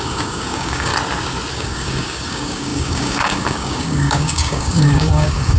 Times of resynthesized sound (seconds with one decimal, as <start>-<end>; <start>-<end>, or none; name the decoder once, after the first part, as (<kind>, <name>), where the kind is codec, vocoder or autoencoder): 0.0-0.9 (codec, DAC); 1.5-5.6